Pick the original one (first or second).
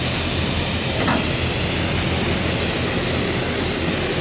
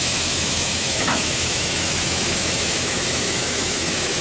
first